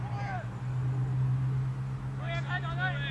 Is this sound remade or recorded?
recorded